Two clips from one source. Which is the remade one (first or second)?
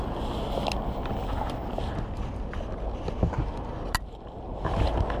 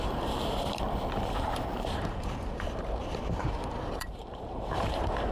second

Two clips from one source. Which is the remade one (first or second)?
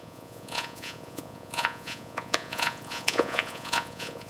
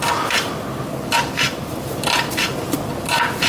first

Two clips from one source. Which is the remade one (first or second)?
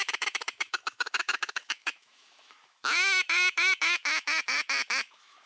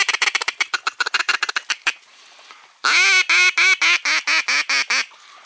first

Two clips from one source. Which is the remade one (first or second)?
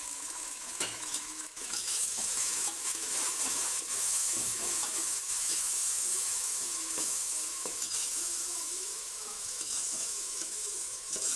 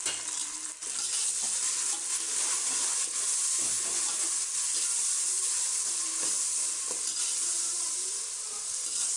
first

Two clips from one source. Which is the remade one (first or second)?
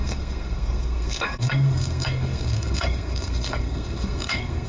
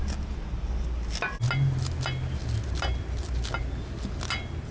first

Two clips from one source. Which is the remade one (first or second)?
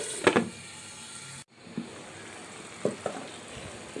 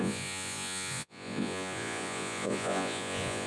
second